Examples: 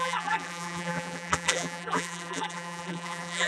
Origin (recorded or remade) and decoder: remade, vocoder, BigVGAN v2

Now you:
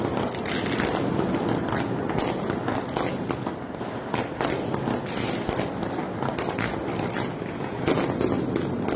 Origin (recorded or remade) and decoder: recorded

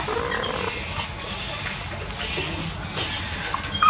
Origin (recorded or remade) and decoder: recorded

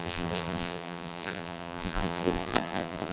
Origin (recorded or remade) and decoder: remade, vocoder, BigVGAN v2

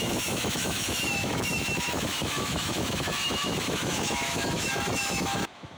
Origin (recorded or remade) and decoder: remade, autoencoder, DAC-VAE